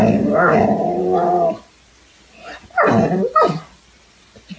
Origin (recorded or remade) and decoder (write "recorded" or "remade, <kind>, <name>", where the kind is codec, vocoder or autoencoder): recorded